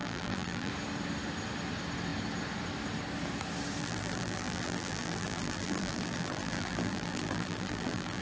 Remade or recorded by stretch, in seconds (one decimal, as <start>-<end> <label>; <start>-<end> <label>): 0.0-0.7 remade; 0.7-3.8 recorded; 3.8-8.2 remade